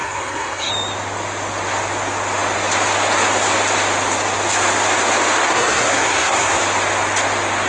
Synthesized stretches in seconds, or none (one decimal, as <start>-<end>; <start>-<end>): 0.0-0.7; 5.5-6.6